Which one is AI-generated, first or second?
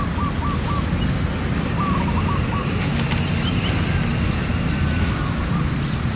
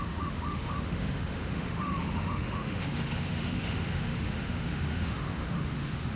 second